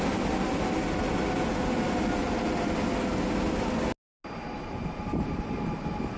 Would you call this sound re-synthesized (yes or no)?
no